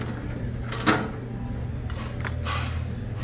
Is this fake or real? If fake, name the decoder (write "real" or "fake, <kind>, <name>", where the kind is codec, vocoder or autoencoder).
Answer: real